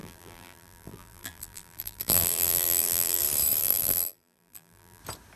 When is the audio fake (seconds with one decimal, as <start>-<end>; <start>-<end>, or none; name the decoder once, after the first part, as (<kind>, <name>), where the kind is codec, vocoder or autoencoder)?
0.0-3.2 (vocoder, BigVGAN v2); 3.6-5.0